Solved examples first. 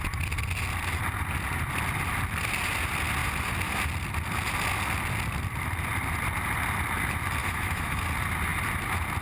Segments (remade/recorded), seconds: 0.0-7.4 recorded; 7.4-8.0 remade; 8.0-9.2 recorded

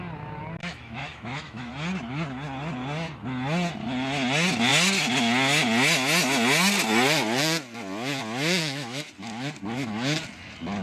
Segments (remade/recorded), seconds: 0.0-0.6 recorded; 0.6-1.7 remade; 1.7-8.6 recorded; 8.6-9.1 remade; 9.1-10.8 recorded

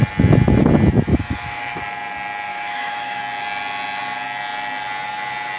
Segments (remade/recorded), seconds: 0.0-1.1 recorded; 1.1-1.8 remade; 1.8-2.5 recorded; 2.5-3.2 remade; 3.2-5.6 recorded

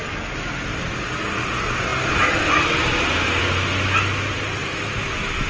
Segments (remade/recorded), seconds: 0.0-4.6 recorded; 4.6-5.5 remade